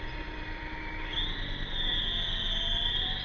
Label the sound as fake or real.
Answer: real